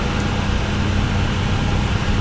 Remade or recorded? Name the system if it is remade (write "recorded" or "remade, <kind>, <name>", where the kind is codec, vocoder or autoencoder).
recorded